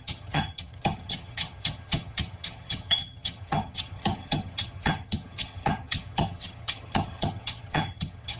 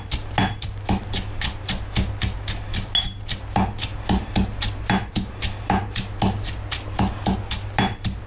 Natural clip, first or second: second